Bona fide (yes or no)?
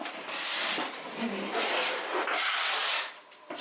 no